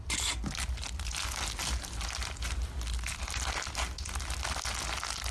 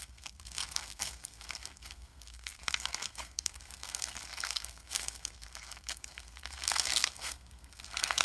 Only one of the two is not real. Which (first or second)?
second